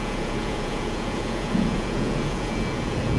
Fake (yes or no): yes